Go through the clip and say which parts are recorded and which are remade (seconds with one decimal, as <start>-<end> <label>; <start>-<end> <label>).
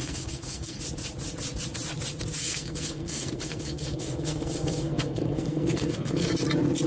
0.0-0.8 remade; 0.8-2.4 recorded; 2.4-6.3 remade; 6.3-6.9 recorded